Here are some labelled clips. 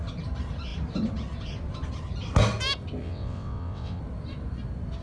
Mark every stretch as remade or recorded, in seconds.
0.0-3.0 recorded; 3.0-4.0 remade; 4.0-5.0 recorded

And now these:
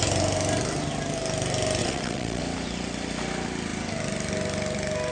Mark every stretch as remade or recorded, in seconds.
0.0-1.8 recorded; 1.8-2.4 remade; 2.4-5.1 recorded